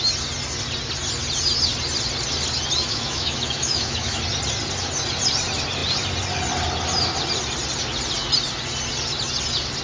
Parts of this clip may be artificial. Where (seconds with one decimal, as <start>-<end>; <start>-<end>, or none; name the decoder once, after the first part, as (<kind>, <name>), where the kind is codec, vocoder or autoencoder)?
2.9-4.2 (autoencoder, DAC-VAE)